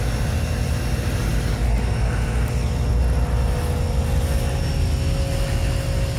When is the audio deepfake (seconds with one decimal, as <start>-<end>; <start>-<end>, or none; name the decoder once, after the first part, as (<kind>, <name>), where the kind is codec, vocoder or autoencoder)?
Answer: none